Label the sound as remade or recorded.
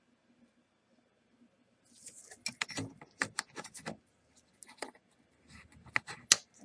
recorded